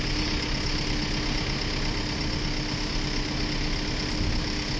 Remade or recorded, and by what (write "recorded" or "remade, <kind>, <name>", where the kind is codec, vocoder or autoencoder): recorded